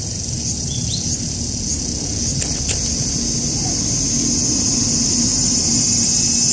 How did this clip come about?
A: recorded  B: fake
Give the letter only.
A